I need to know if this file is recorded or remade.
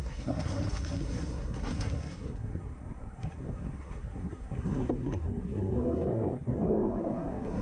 remade